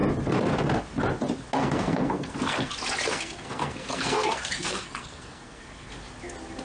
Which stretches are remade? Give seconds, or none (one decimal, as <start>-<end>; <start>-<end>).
1.6-2.7; 3.1-5.9

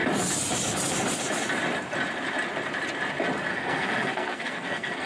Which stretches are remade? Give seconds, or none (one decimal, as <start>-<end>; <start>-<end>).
3.5-5.1

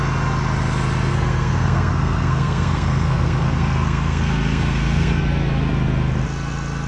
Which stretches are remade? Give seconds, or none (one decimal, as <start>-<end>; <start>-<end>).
1.1-5.2

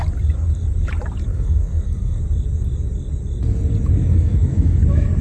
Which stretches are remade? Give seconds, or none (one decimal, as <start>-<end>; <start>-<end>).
1.3-2.2; 4.1-4.8

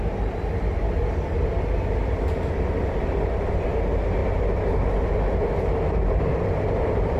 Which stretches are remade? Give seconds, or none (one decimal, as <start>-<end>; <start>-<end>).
none

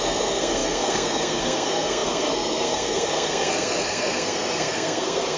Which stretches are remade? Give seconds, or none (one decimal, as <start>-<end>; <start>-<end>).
0.0-5.4

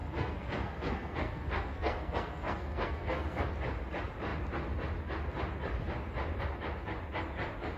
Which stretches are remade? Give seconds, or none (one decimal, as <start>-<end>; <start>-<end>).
0.0-3.5

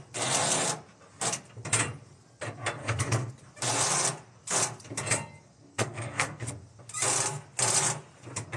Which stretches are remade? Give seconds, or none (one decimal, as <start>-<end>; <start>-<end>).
2.8-3.3; 5.7-6.5